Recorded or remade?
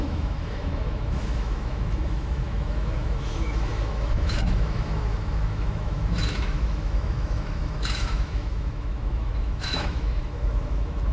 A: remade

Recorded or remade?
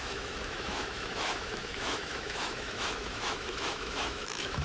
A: remade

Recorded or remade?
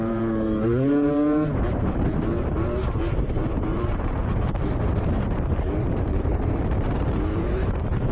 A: remade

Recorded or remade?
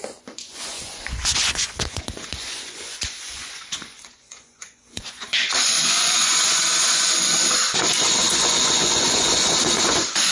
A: remade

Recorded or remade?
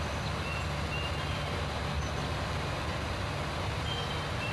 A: recorded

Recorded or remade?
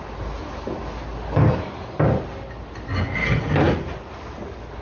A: recorded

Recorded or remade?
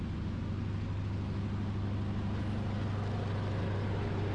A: recorded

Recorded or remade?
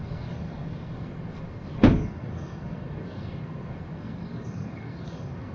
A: remade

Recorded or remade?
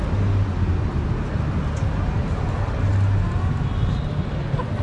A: recorded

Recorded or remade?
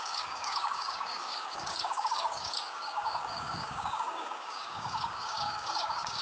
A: remade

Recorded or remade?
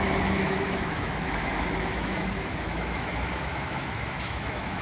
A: remade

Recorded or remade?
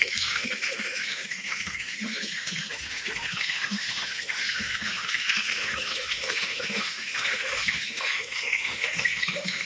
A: remade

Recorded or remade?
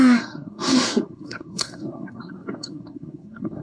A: remade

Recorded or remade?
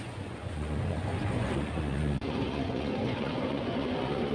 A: remade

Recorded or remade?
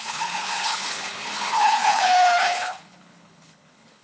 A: remade